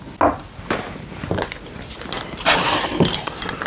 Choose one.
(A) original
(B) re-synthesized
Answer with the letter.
A